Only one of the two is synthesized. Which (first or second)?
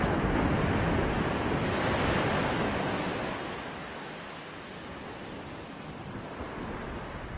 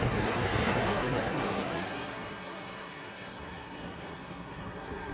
second